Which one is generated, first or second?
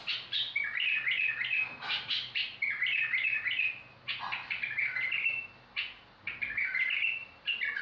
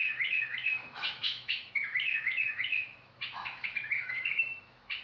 second